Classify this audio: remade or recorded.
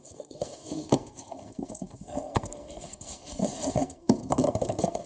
remade